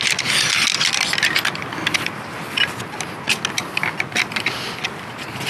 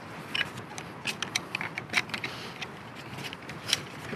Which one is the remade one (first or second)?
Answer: second